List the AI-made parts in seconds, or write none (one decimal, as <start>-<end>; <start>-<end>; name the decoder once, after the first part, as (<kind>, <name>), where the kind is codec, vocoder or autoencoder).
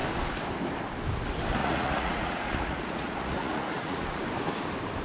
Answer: 1.6-4.2 (vocoder, Vocos)